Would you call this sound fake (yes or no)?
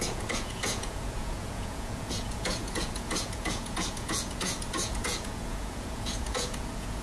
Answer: yes